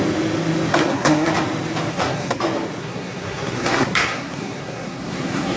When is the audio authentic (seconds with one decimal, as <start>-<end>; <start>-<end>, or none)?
0.0-0.7; 1.3-1.9; 2.4-2.8

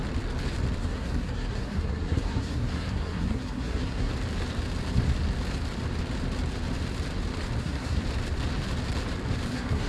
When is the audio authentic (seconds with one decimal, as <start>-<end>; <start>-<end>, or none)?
0.0-0.8; 4.1-7.6; 8.0-9.5

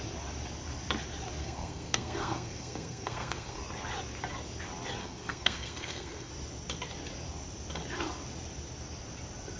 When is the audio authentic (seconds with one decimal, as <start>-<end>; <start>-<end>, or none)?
0.0-1.4; 3.6-5.0; 6.3-9.6

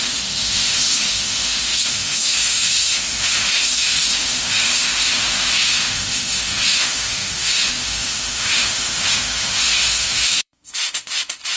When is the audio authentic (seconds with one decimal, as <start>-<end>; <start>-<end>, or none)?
none

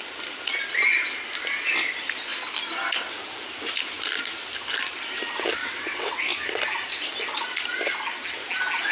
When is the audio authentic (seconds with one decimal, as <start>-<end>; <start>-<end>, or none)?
0.0-5.6; 6.2-8.9

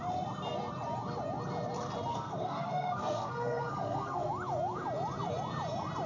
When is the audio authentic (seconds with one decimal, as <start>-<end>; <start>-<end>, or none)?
0.0-2.1; 4.3-6.1

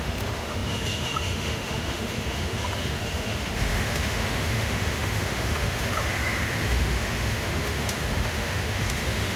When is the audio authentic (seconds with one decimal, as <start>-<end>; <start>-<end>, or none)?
none